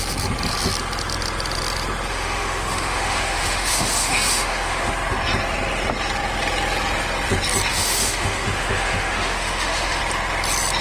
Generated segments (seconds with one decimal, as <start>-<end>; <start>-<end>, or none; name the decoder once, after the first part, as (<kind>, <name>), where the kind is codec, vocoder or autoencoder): 2.1-4.9 (autoencoder, DAC-VAE); 7.7-10.0